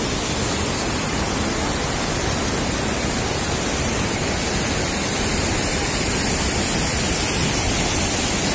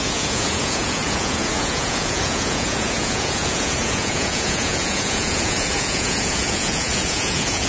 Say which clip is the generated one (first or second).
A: second